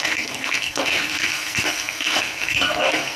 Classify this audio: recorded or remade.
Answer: remade